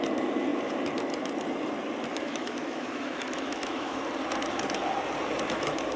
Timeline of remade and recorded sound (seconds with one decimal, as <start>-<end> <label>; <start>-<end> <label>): 0.0-2.1 recorded; 2.1-4.0 remade; 4.0-6.0 recorded